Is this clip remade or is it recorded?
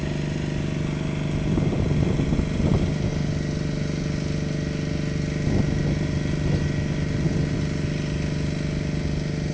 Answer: recorded